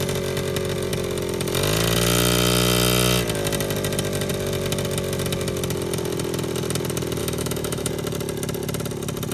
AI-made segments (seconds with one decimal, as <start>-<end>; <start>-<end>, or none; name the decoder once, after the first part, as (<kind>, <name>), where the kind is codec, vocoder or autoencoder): 7.2-7.9 (autoencoder, DAC-VAE)